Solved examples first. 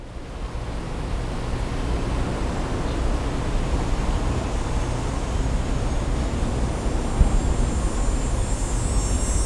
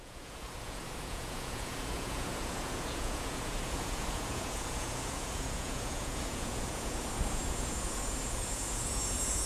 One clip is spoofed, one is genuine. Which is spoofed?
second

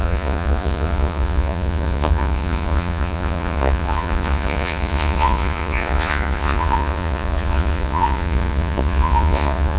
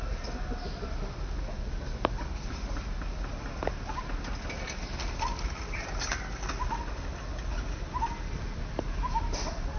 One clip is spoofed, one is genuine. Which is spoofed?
first